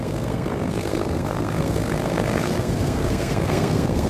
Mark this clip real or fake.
fake